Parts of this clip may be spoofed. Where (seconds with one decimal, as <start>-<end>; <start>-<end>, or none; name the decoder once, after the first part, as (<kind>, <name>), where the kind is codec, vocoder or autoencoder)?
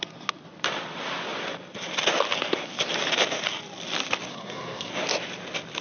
4.3-4.9 (codec, SNAC)